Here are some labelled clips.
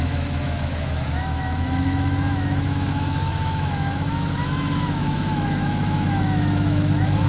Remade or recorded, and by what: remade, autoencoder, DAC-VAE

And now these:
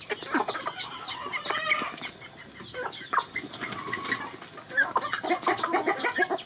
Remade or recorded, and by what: recorded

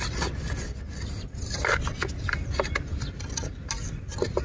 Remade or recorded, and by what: recorded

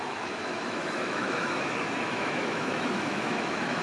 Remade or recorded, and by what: remade, autoencoder, DAC-VAE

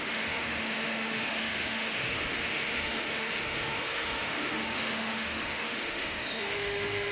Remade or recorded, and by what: remade, autoencoder, DAC-VAE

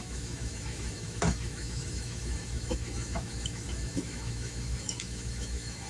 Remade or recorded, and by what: remade, autoencoder, DAC-VAE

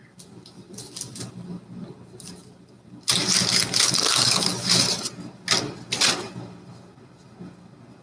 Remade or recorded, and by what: recorded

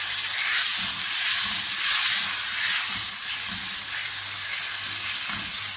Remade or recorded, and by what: recorded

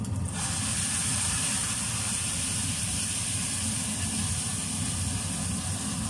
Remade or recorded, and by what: recorded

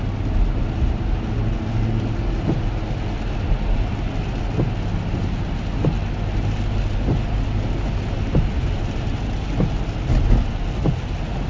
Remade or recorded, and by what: recorded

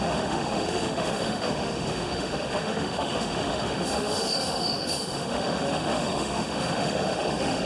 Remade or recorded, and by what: remade, autoencoder, DAC-VAE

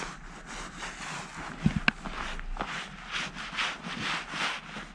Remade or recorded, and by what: recorded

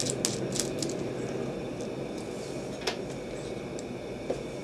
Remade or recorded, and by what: recorded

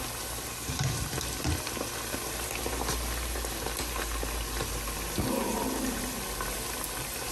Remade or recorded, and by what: recorded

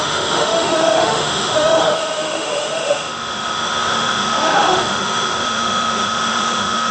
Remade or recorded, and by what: remade, autoencoder, DAC-VAE